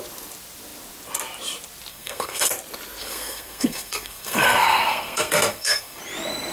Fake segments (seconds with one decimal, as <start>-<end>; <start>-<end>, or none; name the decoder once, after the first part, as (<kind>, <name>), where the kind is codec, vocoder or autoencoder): 1.9-2.5 (codec, SNAC); 3.0-6.0